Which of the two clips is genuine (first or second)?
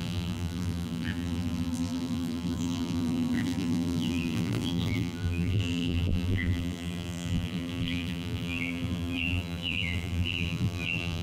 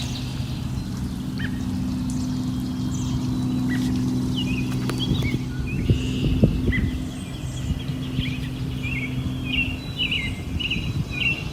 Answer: second